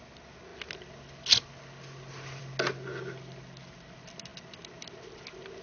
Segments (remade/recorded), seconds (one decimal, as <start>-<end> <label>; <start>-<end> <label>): 0.0-5.6 recorded